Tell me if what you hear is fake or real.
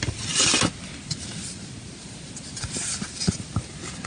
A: real